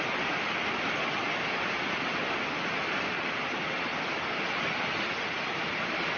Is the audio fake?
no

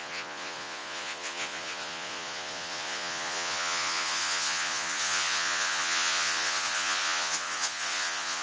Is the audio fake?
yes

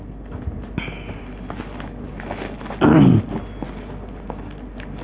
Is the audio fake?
no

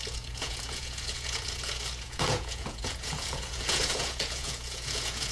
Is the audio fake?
yes